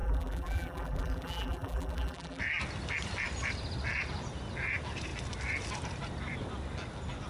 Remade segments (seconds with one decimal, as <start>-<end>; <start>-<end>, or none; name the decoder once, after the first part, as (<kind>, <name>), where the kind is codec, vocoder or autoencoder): 0.0-2.4 (vocoder, BigVGAN v2)

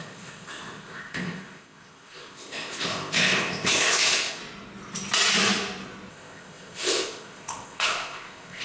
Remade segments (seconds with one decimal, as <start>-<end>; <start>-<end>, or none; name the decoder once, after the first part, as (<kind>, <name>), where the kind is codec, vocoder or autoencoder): 0.0-4.4 (codec, ZipCodec); 6.1-8.6

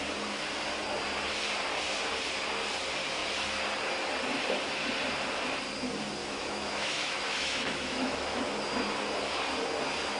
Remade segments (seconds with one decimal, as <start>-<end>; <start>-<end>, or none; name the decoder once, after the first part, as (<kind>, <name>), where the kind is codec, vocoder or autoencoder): 6.2-8.4 (autoencoder, DAC-VAE)

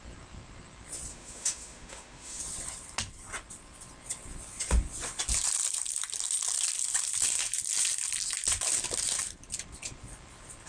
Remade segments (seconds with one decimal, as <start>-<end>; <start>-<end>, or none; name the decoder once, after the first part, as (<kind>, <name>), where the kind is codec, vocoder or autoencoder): 1.1-2.4 (autoencoder, DAC-VAE)

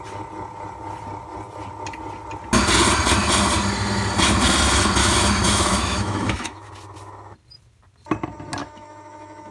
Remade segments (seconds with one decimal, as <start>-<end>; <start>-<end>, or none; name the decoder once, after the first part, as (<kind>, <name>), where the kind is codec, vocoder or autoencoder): 5.0-6.7 (autoencoder, DAC-VAE); 8.6-9.5

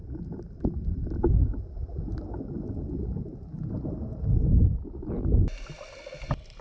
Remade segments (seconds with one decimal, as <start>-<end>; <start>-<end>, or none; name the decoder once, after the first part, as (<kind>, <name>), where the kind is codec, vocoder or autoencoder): none

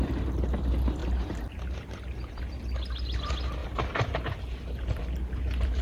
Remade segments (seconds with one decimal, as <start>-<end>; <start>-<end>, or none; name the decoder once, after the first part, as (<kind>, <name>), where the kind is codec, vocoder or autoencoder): 1.0-2.5 (vocoder, BigVGAN v2); 3.6-4.3

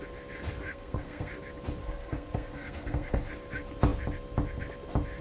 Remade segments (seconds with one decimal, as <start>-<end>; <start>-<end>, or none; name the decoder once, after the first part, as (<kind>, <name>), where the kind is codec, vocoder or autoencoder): 0.7-1.3 (codec, SNAC); 1.8-3.3